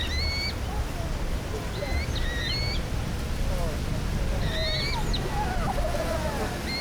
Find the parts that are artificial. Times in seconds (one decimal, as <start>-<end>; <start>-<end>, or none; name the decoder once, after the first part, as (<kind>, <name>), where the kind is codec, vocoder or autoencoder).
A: none